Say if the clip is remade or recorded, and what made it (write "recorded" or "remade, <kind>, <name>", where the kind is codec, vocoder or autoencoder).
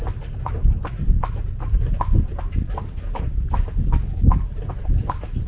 recorded